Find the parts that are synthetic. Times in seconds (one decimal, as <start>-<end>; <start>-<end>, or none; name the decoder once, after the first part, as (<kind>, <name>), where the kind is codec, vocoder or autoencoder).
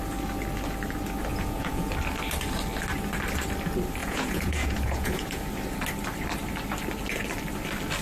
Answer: 1.3-1.9 (vocoder, Vocos); 4.0-5.4